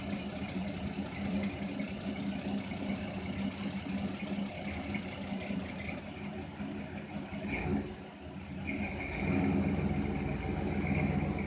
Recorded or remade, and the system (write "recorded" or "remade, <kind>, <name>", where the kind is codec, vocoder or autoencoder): recorded